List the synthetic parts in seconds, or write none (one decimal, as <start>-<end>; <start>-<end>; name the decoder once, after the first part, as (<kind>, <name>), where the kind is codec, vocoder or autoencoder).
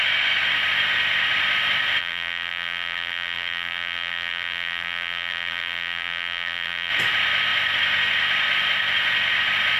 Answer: 2.0-6.9 (vocoder, BigVGAN v2)